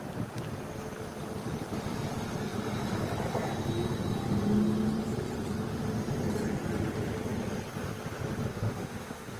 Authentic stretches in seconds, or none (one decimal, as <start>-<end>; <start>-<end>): 0.0-8.5